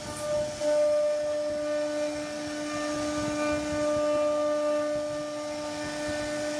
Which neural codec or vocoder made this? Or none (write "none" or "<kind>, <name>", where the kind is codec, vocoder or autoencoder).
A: none